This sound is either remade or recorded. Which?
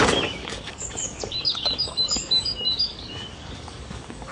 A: remade